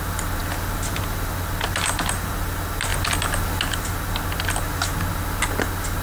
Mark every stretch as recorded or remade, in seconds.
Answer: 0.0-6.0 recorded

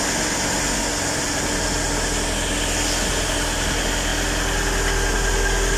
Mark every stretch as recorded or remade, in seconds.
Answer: 0.0-5.8 recorded